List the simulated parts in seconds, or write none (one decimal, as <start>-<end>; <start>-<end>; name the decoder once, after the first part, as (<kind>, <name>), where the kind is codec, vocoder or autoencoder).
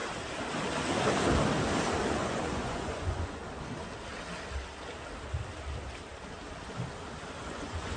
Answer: 2.1-3.4 (vocoder, Vocos); 7.4-8.0